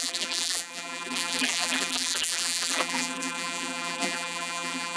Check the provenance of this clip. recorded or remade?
remade